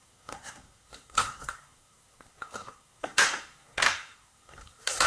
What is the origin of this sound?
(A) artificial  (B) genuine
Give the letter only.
A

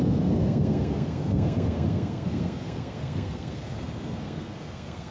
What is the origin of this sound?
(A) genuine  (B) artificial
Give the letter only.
B